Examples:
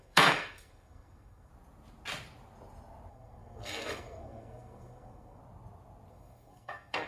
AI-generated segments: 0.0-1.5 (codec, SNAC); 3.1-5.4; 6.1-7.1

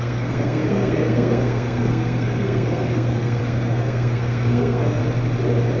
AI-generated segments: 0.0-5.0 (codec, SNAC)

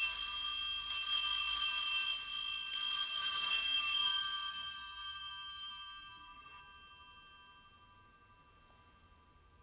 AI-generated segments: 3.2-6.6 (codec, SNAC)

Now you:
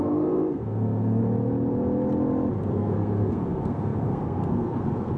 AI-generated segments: 0.0-1.2 (codec, SNAC); 2.7-5.2

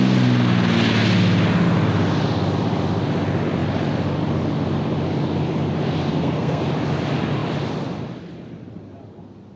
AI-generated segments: 6.1-6.6 (codec, SNAC)